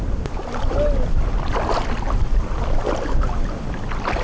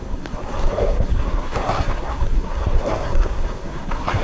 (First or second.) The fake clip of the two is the second